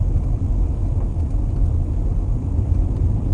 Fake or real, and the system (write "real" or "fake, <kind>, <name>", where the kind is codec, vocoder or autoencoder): fake, vocoder, BigVGAN v2